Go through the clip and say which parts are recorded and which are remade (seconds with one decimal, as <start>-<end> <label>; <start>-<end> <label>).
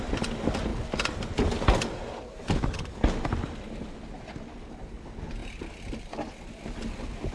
0.0-7.3 recorded